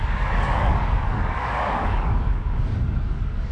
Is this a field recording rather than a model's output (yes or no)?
no